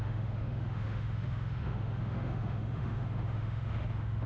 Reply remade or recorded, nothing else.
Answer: remade